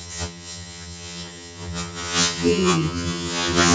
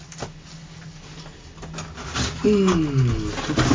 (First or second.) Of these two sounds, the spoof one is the first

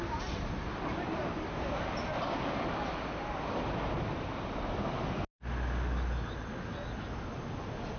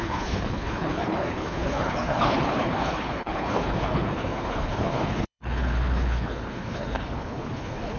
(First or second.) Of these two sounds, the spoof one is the second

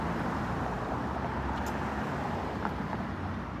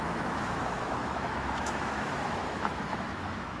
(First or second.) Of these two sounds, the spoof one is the second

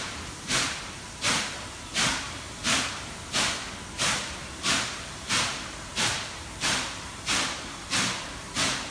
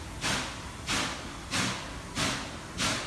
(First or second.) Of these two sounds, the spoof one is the first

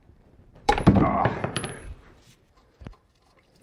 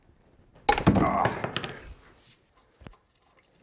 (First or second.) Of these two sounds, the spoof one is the first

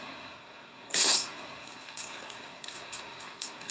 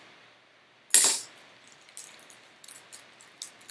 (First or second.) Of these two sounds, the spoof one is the first